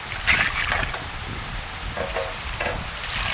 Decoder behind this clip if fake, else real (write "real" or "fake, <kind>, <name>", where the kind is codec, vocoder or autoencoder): real